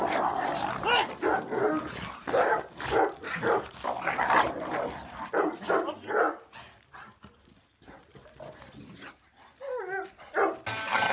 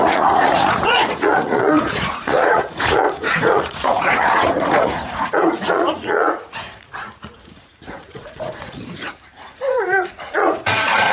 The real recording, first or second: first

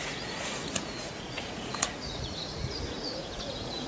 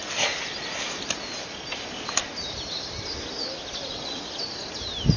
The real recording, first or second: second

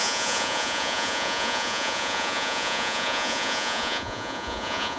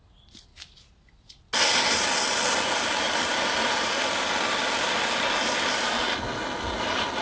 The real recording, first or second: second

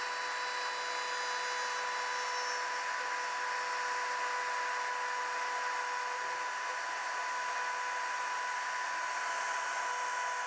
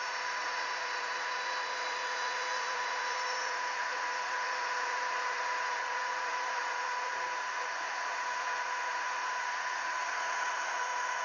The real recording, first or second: first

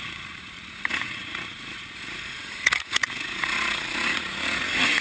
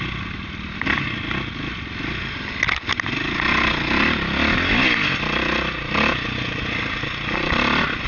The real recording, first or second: second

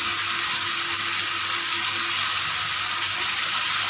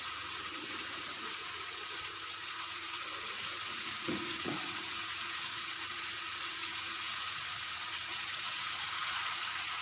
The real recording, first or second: first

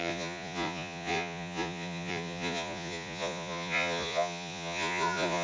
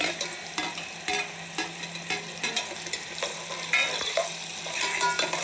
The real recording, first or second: second